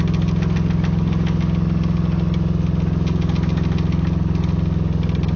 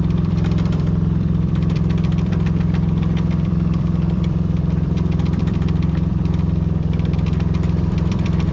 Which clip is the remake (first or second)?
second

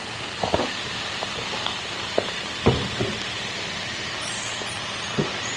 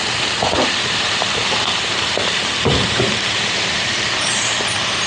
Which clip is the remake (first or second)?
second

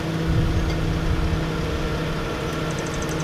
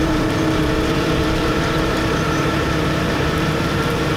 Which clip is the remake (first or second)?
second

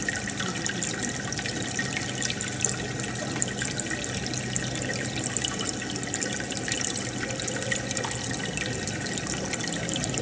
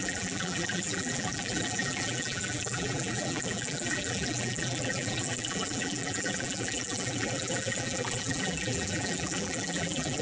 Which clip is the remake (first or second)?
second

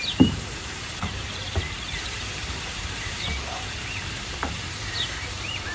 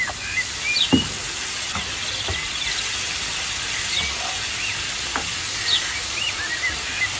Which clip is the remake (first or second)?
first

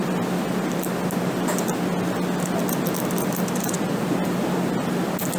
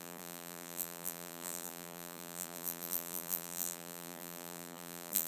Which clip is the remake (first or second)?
second